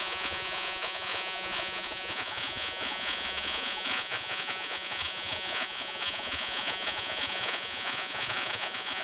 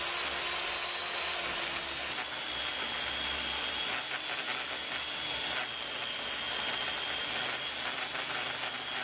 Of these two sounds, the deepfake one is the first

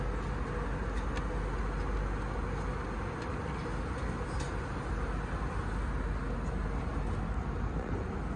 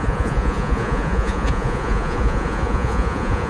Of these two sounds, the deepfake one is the second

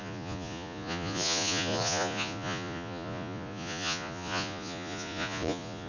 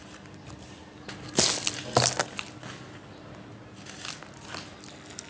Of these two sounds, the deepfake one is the first